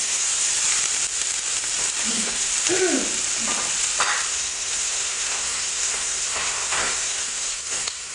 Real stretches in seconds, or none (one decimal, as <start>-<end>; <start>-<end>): 0.5-2.1; 2.5-4.3